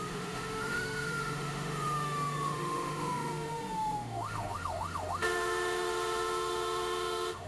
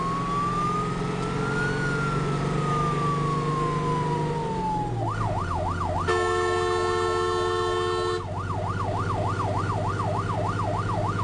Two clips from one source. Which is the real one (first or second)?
second